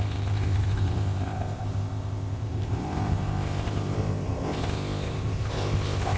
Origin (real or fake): fake